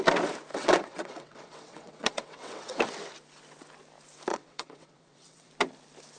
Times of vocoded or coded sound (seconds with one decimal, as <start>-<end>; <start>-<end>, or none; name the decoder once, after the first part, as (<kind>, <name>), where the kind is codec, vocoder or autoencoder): 0.5-2.8 (vocoder, WaveNeXt); 4.3-5.5